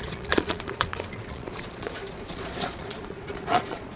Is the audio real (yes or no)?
no